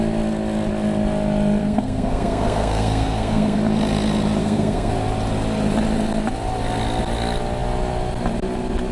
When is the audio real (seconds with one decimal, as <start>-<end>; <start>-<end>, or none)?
0.0-1.6; 3.6-4.4; 4.9-8.9